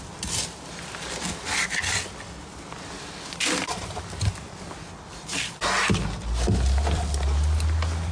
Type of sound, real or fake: real